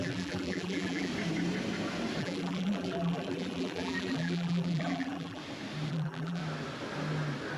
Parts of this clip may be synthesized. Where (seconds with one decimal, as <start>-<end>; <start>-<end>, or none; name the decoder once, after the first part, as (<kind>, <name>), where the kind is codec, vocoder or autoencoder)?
0.0-1.1 (vocoder, BigVGAN v2); 2.2-5.4; 5.9-6.4